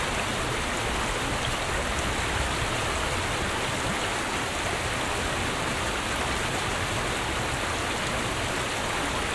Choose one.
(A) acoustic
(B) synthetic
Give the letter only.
A